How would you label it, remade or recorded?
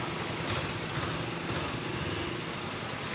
recorded